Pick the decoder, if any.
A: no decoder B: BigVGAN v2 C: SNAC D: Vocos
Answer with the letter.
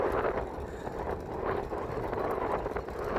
A